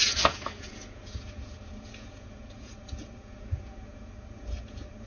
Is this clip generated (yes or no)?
yes